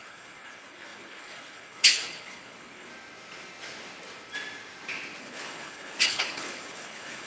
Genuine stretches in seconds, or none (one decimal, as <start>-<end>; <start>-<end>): 2.9-5.2